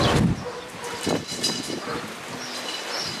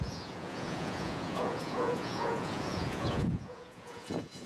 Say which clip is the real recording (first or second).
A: first